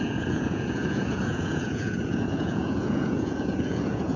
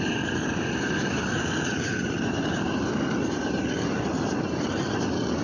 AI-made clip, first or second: first